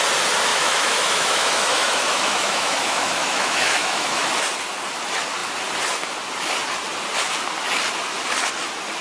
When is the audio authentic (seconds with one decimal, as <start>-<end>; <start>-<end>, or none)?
0.0-0.5; 4.3-9.0